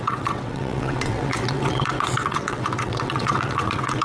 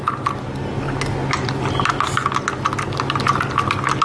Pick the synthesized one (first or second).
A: first